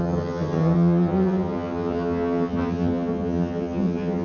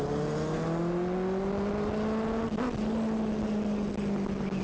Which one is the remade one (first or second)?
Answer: first